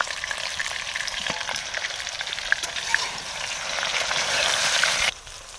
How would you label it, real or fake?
fake